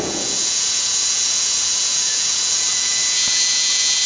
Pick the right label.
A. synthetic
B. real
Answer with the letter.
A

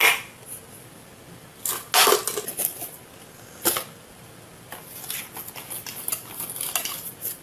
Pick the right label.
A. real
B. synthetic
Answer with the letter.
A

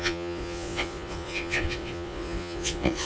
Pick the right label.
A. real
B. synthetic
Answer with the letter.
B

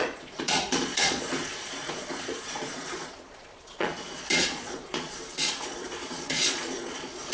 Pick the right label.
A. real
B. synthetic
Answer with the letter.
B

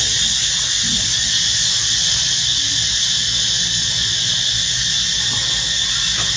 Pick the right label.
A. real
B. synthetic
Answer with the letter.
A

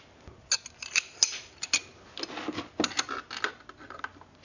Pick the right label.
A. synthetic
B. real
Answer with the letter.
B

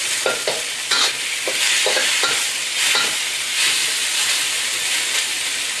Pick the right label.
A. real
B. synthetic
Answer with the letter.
A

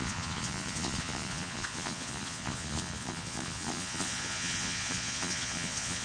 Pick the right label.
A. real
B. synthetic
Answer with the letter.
B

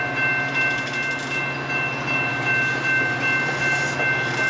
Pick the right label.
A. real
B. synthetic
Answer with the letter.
A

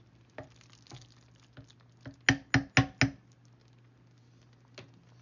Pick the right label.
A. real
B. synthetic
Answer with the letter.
A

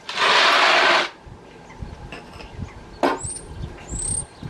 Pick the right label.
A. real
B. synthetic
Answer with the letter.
A